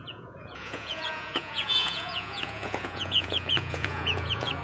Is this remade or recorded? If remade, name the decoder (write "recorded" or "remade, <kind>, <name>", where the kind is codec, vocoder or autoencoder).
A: remade, vocoder, Vocos